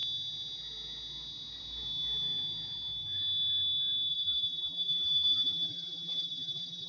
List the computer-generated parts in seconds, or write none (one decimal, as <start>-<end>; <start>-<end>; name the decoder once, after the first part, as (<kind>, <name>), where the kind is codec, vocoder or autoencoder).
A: 4.1-6.9 (vocoder, BigVGAN v2)